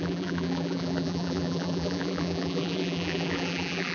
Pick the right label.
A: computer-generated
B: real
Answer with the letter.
A